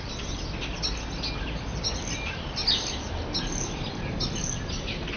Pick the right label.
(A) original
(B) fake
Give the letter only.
A